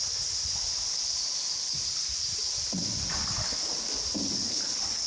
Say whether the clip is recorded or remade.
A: recorded